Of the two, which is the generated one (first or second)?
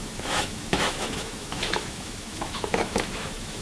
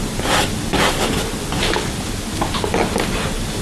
first